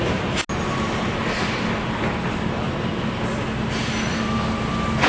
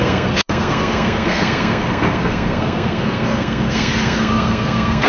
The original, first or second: first